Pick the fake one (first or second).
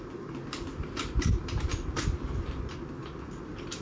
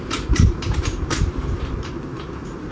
second